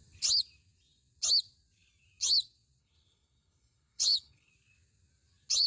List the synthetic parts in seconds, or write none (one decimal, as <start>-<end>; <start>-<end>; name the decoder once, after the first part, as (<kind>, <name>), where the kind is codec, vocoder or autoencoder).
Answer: 2.8-4.5 (codec, HILCodec)